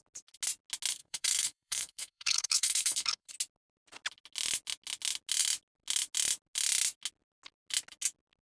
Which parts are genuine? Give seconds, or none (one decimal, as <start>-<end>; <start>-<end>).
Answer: 0.0-1.0; 3.3-8.5